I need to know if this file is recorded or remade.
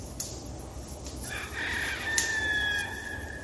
recorded